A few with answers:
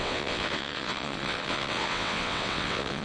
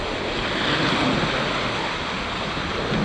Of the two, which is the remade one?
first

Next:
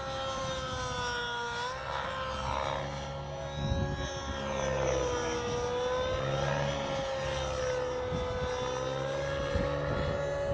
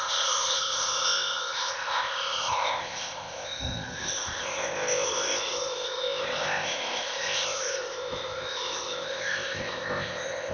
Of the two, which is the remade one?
second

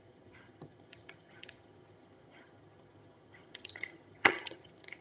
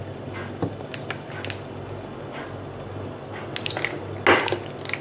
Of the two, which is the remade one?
first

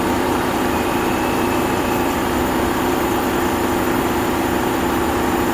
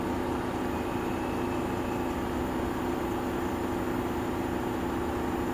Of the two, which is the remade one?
first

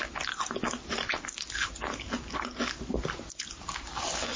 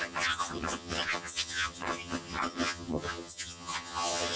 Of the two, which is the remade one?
second